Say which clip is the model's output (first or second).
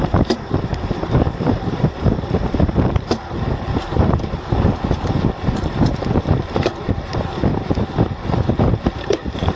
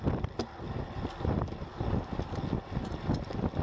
first